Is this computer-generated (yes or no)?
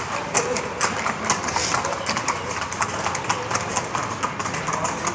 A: no